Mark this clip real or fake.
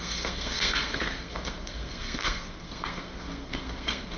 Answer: fake